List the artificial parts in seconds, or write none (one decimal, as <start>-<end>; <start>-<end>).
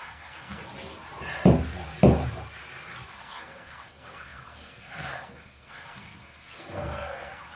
0.0-0.6; 3.1-7.6